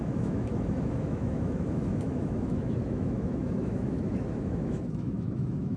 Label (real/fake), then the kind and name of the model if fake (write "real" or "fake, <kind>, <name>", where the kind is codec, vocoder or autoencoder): fake, autoencoder, DAC-VAE